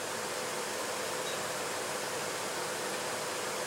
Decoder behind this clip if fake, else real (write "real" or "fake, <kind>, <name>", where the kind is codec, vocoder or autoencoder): real